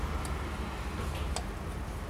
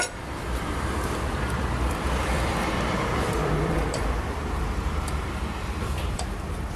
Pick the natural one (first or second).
first